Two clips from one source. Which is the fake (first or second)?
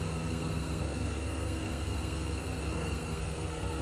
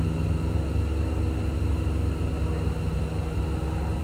first